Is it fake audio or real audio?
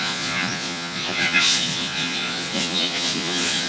fake